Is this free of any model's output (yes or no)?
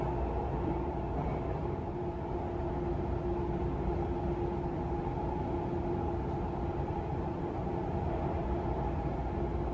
yes